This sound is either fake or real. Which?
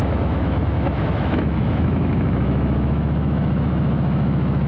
fake